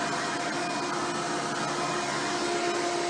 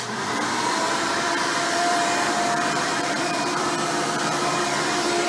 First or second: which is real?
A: first